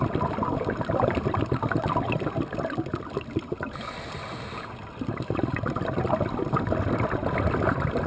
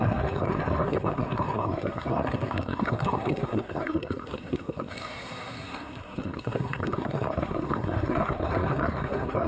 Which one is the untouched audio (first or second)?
first